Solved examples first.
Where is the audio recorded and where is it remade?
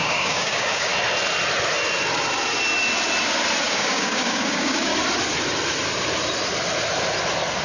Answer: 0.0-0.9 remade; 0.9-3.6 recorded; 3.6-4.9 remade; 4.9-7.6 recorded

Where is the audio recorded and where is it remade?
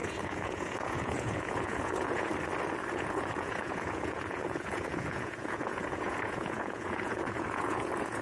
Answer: 0.0-2.3 remade; 2.3-2.9 recorded; 2.9-8.2 remade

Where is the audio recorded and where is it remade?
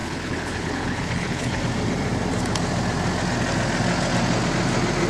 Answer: 0.0-1.6 remade; 1.6-5.1 recorded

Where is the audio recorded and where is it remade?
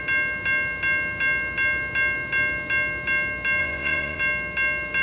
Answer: 0.0-3.6 recorded; 3.6-4.2 remade; 4.2-5.0 recorded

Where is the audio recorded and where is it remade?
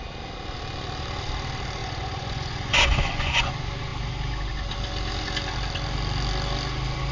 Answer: 0.0-1.8 recorded; 1.8-3.5 remade; 3.5-7.1 recorded